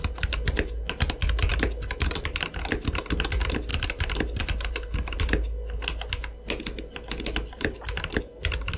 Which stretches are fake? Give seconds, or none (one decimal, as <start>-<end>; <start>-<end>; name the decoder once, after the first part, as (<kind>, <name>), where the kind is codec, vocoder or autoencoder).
none